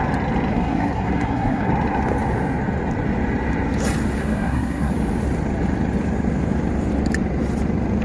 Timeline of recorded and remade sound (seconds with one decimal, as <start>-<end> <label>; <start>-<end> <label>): 0.0-0.5 recorded; 0.5-1.7 remade; 1.7-4.2 recorded; 4.2-4.9 remade; 4.9-8.0 recorded